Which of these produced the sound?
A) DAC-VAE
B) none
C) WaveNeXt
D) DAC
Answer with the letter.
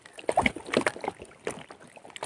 B